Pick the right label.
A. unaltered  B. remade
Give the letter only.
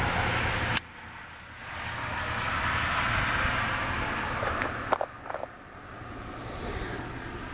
A